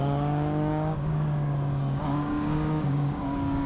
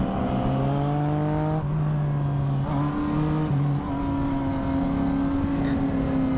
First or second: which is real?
second